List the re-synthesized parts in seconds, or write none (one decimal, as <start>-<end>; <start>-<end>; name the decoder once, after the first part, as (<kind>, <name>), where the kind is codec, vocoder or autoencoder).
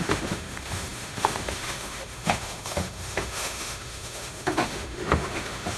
0.0-5.8 (autoencoder, DAC-VAE)